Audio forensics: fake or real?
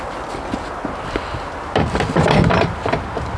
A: real